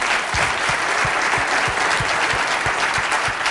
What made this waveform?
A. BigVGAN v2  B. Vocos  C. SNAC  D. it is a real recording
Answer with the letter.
D